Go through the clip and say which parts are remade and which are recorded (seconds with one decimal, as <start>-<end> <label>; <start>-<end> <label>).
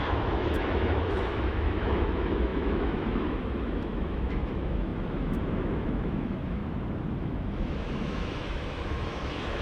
0.0-6.6 remade; 6.6-7.2 recorded; 7.2-9.6 remade